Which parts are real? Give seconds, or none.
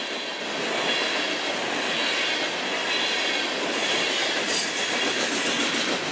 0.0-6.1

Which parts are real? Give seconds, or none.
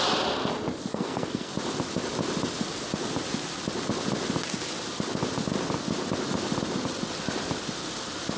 0.0-0.9; 1.5-8.4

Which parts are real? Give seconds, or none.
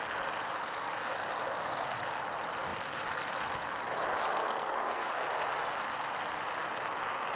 0.0-4.4; 5.1-7.4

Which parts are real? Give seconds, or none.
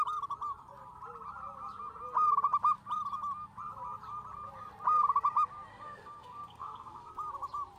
0.0-5.7; 7.1-7.8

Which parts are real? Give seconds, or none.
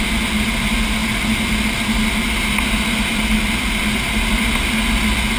0.0-5.4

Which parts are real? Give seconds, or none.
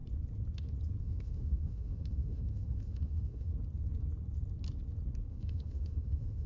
0.0-1.0; 3.5-5.3